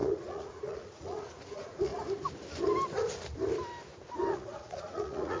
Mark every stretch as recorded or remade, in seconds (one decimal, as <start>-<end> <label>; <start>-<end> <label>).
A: 0.0-1.9 remade; 1.9-4.3 recorded; 4.3-5.4 remade